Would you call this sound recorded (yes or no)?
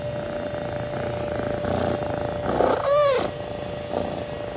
yes